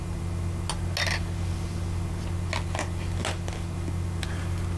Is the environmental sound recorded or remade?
recorded